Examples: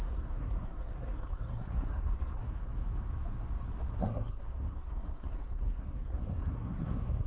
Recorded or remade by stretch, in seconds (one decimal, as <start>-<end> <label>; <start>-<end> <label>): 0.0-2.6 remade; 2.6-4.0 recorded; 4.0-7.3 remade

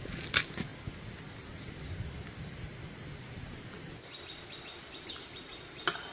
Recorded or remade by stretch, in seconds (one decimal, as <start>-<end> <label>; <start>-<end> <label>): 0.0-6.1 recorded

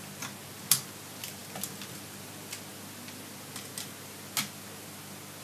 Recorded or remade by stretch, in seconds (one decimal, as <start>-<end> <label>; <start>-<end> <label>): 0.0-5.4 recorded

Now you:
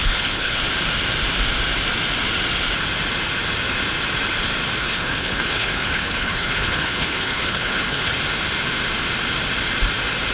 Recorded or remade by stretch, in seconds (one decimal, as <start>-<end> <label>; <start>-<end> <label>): 0.0-0.6 remade; 0.6-4.8 recorded; 4.8-8.1 remade; 8.1-10.3 recorded